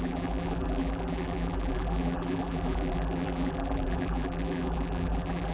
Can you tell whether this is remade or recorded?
remade